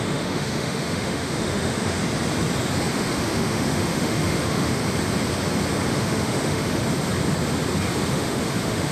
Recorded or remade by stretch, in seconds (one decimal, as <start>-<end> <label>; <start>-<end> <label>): 0.0-2.0 remade; 2.0-2.9 recorded; 2.9-4.8 remade; 4.8-5.9 recorded; 5.9-6.8 remade; 6.8-8.1 recorded; 8.1-8.9 remade